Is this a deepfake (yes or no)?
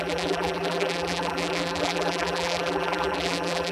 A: yes